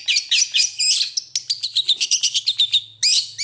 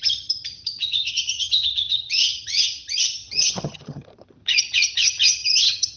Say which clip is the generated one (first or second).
second